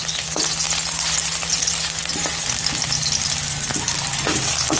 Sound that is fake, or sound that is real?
real